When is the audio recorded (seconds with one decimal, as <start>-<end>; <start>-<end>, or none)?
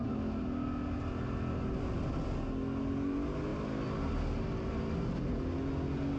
0.0-6.2